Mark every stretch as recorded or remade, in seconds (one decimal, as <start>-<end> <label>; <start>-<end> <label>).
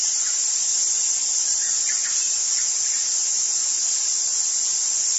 0.0-0.7 recorded; 0.7-1.7 remade; 1.7-3.2 recorded; 3.2-4.6 remade; 4.6-5.2 recorded